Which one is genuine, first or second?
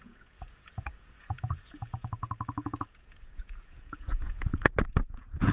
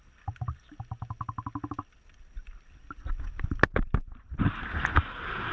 second